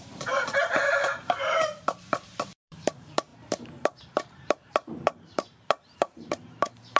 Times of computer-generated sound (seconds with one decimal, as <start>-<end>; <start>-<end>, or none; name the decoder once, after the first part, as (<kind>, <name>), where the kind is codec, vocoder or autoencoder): 0.0-7.0 (vocoder, BigVGAN v2)